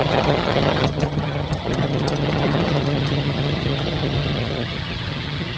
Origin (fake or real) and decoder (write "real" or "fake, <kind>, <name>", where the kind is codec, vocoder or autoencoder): fake, vocoder, HiFi-GAN